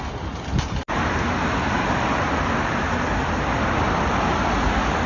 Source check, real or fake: real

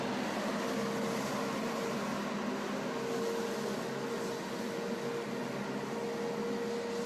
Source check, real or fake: real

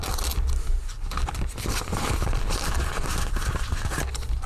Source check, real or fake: real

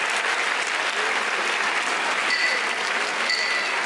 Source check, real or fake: real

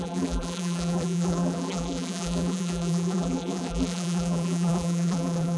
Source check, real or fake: fake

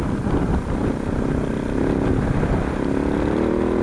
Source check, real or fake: real